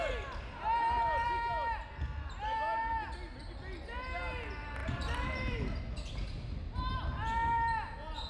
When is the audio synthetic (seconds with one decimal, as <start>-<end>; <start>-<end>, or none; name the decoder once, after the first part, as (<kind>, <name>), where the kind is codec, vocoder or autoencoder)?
4.8-5.8 (vocoder, BigVGAN v2)